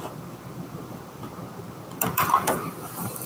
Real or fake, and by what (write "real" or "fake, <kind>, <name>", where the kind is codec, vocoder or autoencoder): fake, vocoder, BigVGAN v2